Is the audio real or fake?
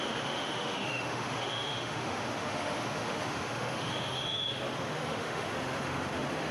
fake